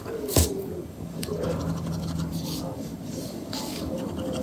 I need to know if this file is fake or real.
fake